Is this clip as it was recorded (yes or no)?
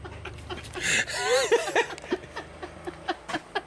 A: yes